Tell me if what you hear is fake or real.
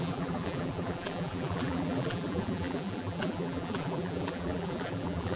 fake